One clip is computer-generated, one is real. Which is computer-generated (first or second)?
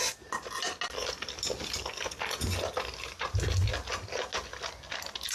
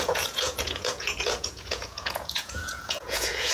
second